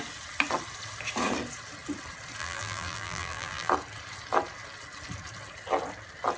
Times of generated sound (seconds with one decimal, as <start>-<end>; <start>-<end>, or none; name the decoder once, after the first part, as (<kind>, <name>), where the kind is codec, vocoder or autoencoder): 2.4-3.7 (vocoder, BigVGAN v2)